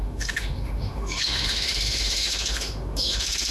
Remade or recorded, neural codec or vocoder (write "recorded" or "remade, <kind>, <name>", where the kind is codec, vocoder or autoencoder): remade, autoencoder, DAC-VAE